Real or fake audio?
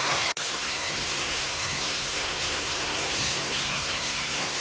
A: fake